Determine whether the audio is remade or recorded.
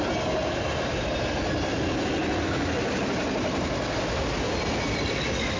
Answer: recorded